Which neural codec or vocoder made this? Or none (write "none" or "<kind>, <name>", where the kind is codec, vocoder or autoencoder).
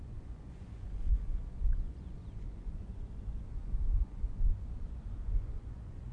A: vocoder, Vocos